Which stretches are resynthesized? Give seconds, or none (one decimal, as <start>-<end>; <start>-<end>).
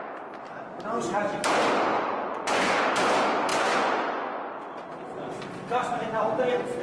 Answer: 1.9-2.8; 3.5-4.5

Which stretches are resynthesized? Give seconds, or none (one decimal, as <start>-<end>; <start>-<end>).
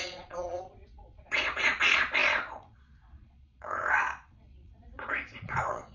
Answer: 0.0-5.9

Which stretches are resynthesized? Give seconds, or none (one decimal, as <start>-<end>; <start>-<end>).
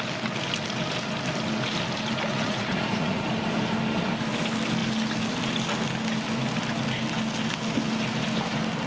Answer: 2.3-3.2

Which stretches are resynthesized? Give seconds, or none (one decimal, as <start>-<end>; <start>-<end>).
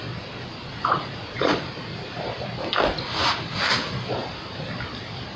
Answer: 0.7-2.2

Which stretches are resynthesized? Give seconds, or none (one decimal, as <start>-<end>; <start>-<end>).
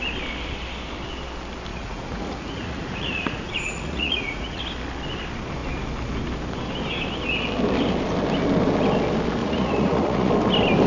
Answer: 1.7-4.6; 9.4-10.3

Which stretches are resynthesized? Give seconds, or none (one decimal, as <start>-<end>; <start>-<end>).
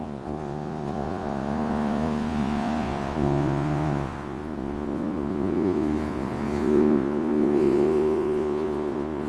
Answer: 0.0-9.3